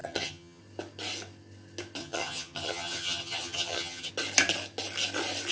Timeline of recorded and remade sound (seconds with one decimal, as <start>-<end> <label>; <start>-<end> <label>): 0.0-0.6 remade; 0.6-2.0 recorded; 2.0-4.1 remade; 4.1-5.5 recorded